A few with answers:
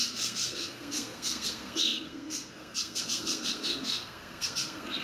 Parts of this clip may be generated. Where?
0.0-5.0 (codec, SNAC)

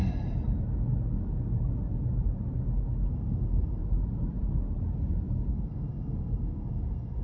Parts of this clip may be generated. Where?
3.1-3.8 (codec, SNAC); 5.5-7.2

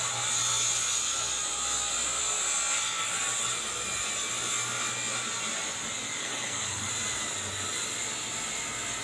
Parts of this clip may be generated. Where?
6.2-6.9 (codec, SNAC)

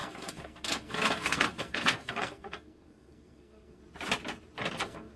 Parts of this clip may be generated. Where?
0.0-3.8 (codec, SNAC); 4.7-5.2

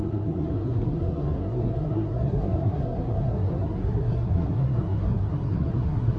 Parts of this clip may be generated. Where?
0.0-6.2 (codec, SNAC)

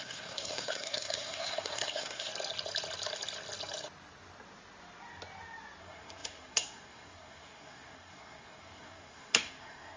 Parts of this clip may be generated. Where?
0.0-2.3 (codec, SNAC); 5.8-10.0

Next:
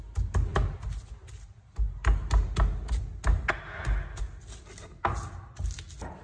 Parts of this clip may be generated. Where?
none

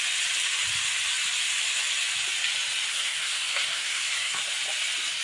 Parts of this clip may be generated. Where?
2.9-4.4 (codec, SNAC)